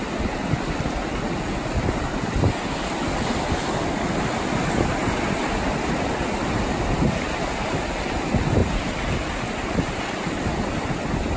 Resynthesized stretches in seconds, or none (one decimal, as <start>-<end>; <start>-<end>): none